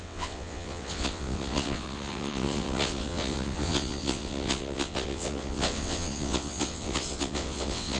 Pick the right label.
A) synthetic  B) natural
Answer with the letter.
A